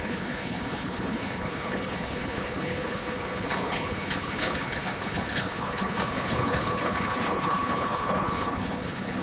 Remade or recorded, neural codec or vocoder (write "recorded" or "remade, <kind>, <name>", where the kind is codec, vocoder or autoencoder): remade, codec, HILCodec